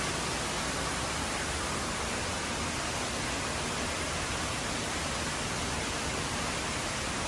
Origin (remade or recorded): recorded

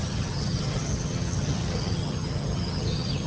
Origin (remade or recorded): remade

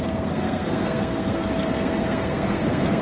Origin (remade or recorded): remade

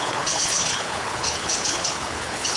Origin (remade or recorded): remade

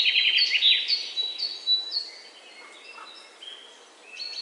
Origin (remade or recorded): recorded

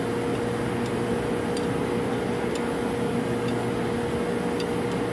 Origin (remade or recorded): recorded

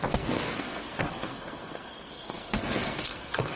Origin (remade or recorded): remade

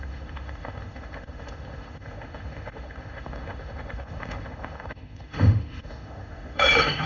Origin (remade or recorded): remade